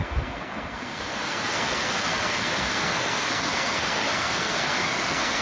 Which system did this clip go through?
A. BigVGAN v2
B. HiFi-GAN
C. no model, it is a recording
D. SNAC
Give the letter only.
D